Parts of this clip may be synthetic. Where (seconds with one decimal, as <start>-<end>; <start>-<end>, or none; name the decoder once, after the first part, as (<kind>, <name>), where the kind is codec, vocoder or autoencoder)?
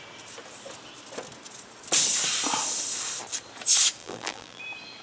4.0-4.6 (vocoder, BigVGAN v2)